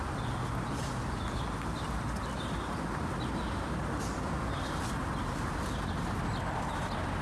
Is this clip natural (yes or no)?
yes